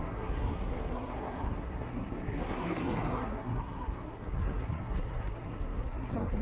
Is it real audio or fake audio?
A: fake